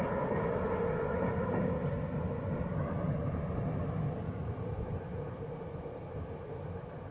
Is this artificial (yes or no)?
no